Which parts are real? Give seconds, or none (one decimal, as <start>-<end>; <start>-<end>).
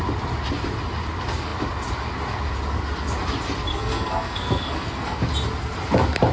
0.0-3.7; 5.2-6.3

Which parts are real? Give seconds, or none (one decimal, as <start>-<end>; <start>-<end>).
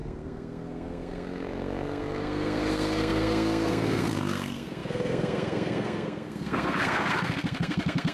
none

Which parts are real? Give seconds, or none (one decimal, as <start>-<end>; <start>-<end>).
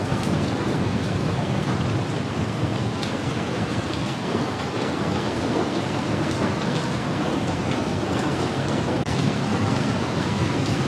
1.7-2.3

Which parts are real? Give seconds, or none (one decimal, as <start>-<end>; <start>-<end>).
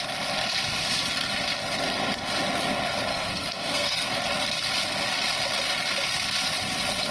0.0-3.1; 4.1-7.1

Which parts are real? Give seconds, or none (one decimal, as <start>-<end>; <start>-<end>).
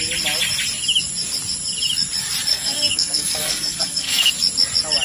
0.0-2.5; 4.3-5.0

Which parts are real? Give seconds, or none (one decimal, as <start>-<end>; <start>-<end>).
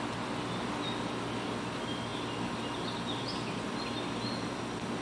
0.0-5.0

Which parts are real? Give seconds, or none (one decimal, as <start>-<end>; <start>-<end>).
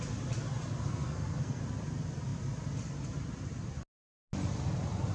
0.0-0.9; 1.6-5.1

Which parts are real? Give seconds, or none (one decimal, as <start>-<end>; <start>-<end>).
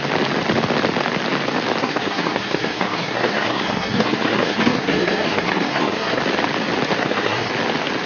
0.0-1.8; 6.2-7.0; 7.5-8.1